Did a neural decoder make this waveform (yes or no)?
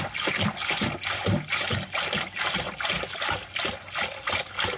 no